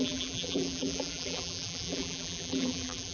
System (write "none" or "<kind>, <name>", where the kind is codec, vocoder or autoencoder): vocoder, BigVGAN v2